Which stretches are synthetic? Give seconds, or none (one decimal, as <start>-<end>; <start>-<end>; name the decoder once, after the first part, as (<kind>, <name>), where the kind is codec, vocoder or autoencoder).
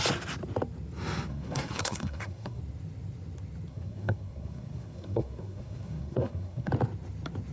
1.3-2.6 (codec, SNAC); 3.7-6.7